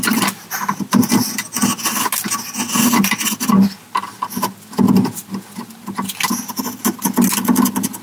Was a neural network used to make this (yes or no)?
no